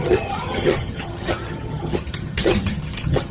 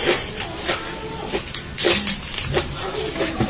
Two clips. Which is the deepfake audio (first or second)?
first